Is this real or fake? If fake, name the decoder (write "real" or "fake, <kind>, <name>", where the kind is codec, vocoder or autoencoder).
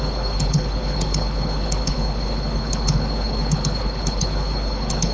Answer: fake, codec, HILCodec